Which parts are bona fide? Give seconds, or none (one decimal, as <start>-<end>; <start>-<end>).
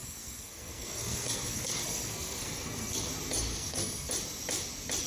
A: 3.1-3.5; 4.1-5.1